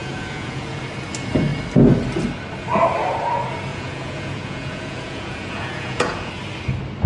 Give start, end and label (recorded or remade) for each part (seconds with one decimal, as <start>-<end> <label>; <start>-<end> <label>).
0.0-0.8 remade; 0.8-3.7 recorded; 3.7-6.3 remade; 6.3-7.1 recorded